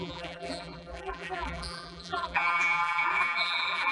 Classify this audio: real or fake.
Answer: fake